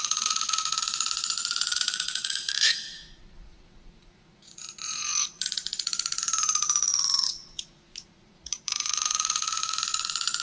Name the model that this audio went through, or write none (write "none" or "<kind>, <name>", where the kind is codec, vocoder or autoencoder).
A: vocoder, Vocos